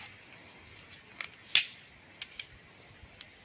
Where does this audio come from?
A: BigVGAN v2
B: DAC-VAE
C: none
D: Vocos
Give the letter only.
C